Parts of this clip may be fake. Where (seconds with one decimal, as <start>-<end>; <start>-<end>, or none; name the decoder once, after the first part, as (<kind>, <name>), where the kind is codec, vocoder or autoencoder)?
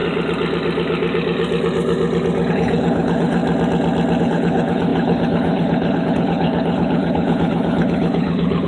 2.5-3.4 (codec, HILCodec); 4.2-8.7